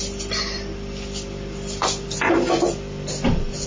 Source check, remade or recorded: recorded